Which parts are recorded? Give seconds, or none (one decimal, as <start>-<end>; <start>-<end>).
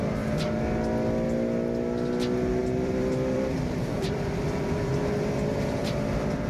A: 0.0-2.6; 5.0-6.5